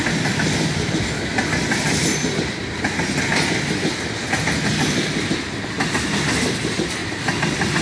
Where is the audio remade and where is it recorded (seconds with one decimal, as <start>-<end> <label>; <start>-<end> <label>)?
0.0-7.8 recorded